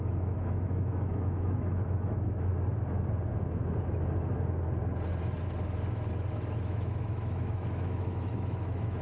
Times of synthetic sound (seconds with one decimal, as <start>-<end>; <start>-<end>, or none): 0.0-2.5; 6.6-9.0